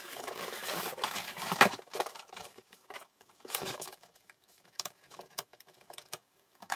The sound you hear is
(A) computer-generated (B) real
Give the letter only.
A